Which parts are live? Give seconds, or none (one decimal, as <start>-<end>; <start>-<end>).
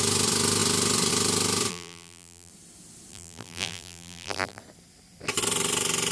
0.0-1.7; 2.5-3.1; 4.6-6.1